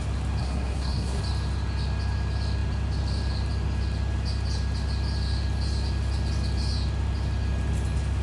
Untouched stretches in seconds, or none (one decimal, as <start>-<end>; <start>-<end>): 0.0-0.4; 1.2-8.2